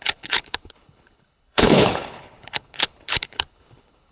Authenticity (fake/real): fake